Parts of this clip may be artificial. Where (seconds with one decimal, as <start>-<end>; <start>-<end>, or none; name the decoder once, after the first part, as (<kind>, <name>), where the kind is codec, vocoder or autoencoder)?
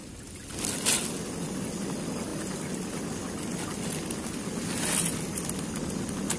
none